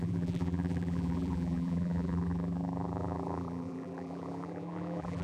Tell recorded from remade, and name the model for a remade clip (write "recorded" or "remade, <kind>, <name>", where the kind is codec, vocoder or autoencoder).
remade, vocoder, BigVGAN v2